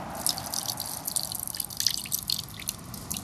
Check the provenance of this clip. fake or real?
real